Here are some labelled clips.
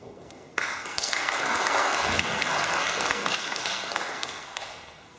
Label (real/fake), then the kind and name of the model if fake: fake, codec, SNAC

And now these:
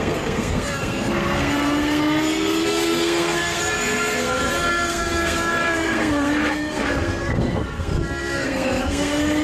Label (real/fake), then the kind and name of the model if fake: fake, codec, SNAC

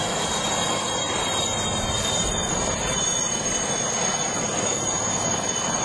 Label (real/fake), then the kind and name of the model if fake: real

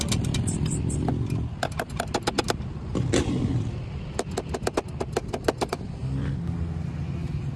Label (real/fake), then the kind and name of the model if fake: real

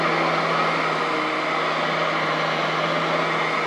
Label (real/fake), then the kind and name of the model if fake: real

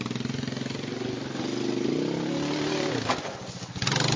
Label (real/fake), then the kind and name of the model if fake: real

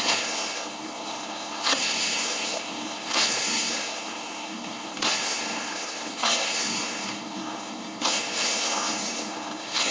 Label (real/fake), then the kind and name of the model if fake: fake, codec, SNAC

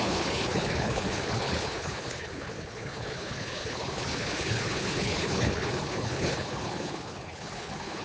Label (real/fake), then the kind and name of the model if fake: fake, codec, HILCodec